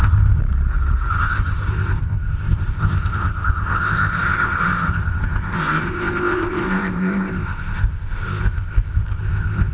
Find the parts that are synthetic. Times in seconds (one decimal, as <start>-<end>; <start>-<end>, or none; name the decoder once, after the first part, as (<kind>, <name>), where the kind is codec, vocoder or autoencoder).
0.0-0.4 (codec, ZipCodec); 1.1-9.7